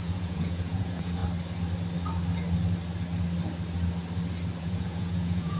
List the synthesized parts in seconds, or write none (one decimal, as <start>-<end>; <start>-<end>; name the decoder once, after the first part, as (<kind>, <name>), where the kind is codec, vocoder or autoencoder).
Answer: 0.0-1.2 (vocoder, Vocos); 4.6-5.6